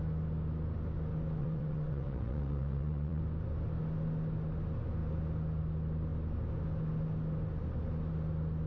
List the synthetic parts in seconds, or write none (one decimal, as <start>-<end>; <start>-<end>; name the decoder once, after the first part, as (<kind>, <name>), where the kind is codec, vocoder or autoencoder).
1.4-3.2 (vocoder, WaveNeXt)